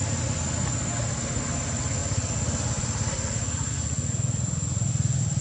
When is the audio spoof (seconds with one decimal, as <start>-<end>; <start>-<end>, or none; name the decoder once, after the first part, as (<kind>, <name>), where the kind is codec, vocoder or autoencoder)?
none